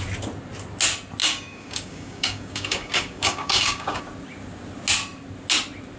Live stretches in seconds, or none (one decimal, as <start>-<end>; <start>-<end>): 0.0-1.2; 4.0-6.0